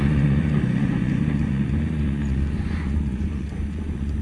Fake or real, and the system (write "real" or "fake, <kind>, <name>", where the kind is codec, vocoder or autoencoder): fake, vocoder, Vocos